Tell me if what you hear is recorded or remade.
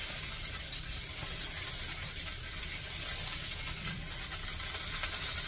recorded